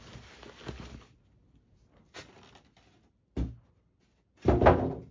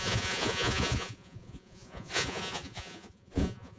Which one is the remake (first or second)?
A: second